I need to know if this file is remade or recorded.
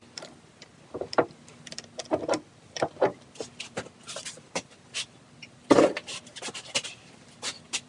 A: remade